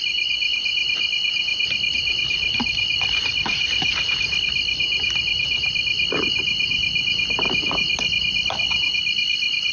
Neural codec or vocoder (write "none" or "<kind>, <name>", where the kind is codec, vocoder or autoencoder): none